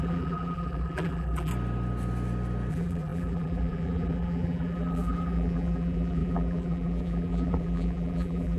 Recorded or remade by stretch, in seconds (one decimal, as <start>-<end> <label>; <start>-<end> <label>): 0.0-1.5 remade; 1.5-2.7 recorded; 2.7-8.6 remade